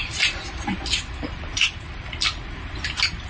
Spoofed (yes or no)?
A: yes